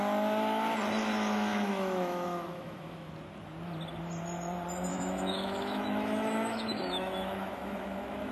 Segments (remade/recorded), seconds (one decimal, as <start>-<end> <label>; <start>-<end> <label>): 0.0-1.5 recorded; 1.5-3.1 remade; 3.1-4.9 recorded; 4.9-8.3 remade

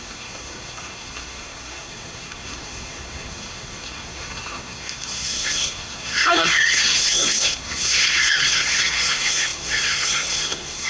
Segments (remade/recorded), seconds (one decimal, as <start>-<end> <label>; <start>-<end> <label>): 0.0-10.9 remade

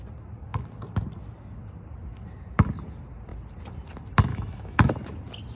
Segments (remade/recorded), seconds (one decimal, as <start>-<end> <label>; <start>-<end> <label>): 0.0-4.3 recorded; 4.3-4.9 remade; 4.9-5.5 recorded

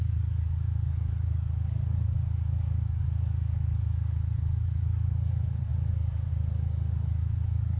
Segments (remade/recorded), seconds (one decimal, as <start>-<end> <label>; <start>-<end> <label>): 0.0-7.8 remade